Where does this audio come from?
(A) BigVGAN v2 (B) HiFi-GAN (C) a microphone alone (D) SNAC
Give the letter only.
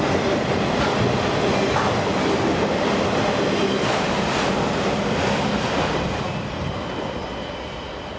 C